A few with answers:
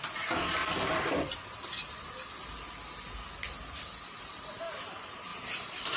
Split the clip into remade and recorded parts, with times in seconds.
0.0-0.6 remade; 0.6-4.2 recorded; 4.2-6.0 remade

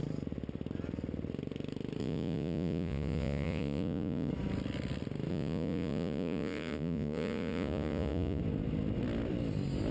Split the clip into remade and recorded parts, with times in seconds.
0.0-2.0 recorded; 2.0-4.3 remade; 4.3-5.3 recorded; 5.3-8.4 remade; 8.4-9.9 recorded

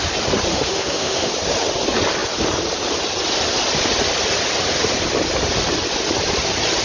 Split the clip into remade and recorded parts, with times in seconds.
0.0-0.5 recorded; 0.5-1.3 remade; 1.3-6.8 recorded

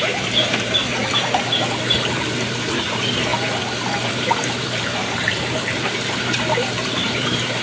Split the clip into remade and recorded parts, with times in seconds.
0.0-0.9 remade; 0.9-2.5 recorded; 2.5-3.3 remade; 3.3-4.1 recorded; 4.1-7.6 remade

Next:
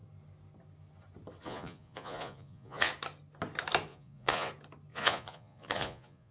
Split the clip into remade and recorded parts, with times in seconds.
0.0-1.4 recorded; 1.4-2.9 remade; 2.9-3.9 recorded; 3.9-4.5 remade; 4.5-4.9 recorded; 4.9-6.3 remade

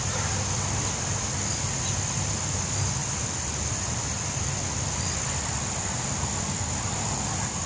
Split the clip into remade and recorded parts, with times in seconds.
0.0-7.7 recorded